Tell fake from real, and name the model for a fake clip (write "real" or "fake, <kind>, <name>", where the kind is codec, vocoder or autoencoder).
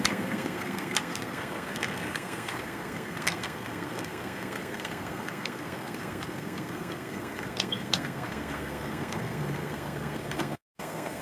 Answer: fake, codec, SNAC